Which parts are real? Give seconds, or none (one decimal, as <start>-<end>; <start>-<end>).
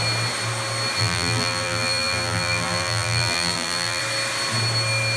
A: 0.0-1.0; 4.0-5.2